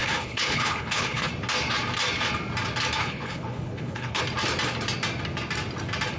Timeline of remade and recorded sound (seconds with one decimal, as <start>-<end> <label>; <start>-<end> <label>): 0.0-1.3 remade; 1.3-3.0 recorded; 3.0-4.2 remade; 4.2-6.2 recorded